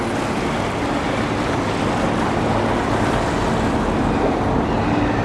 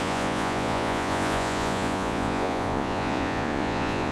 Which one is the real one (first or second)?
first